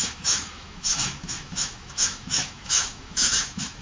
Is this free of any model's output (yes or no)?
no